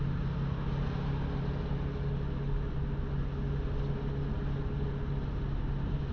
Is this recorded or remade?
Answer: recorded